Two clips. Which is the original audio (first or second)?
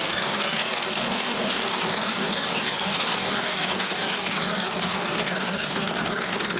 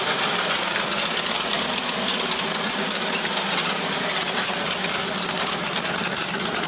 second